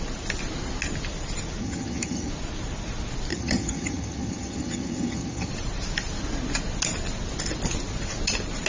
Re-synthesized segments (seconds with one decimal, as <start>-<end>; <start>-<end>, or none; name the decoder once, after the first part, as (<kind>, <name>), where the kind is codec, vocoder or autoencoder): 1.6-2.3 (vocoder, HiFi-GAN); 3.3-5.5